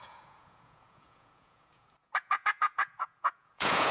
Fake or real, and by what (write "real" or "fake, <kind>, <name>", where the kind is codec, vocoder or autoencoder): fake, vocoder, Vocos